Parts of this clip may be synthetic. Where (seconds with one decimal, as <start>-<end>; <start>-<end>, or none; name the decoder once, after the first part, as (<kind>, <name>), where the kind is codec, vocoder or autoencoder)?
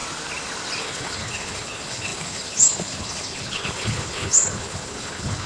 0.8-5.5 (codec, HILCodec)